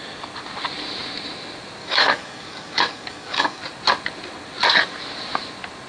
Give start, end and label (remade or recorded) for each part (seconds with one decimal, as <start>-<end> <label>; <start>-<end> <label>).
0.0-1.8 recorded; 1.8-3.6 remade; 3.6-5.9 recorded